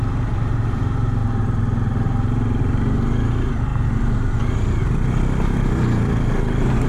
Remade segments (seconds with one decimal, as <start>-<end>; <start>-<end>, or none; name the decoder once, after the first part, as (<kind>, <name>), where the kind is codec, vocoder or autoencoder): none